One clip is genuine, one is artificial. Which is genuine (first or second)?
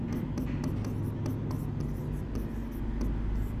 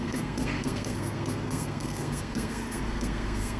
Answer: first